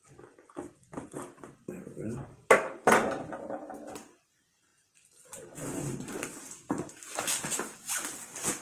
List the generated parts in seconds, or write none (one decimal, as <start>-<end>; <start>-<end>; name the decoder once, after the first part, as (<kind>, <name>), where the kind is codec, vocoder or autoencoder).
4.7-7.2 (vocoder, BigVGAN v2)